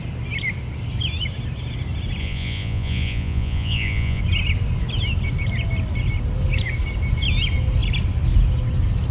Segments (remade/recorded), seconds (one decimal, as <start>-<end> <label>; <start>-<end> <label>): 0.0-2.2 recorded; 2.2-4.2 remade; 4.2-9.1 recorded